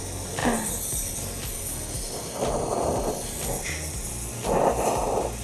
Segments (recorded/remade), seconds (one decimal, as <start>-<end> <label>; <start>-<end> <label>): 0.0-5.4 recorded